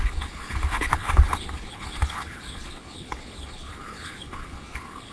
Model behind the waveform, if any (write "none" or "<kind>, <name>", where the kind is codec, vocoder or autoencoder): codec, HILCodec